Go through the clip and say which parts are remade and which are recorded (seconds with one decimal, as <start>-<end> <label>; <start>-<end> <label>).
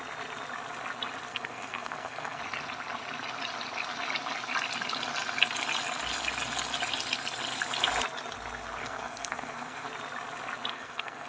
0.0-1.3 recorded; 1.3-2.4 remade; 2.4-8.8 recorded; 8.8-9.9 remade; 9.9-10.7 recorded; 10.7-11.3 remade